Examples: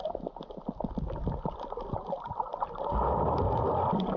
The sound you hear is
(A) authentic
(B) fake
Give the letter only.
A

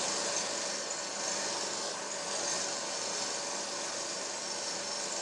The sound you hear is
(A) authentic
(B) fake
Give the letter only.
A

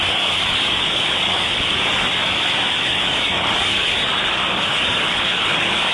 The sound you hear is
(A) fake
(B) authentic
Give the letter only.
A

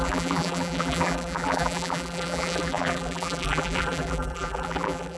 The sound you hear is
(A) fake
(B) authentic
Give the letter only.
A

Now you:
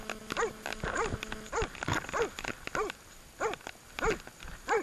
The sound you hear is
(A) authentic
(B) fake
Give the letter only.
A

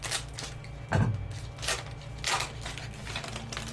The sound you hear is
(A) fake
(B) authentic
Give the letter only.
B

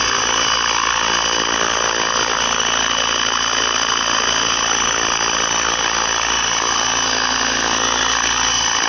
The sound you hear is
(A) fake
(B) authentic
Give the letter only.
B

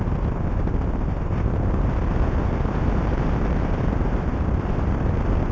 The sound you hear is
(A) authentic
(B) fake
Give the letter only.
B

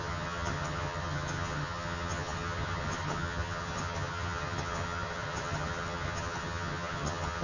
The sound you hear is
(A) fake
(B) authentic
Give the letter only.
A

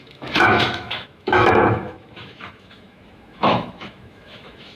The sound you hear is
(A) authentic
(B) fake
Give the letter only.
B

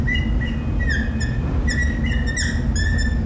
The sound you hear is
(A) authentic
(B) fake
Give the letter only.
A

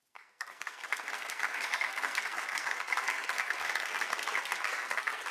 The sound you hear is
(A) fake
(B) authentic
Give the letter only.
A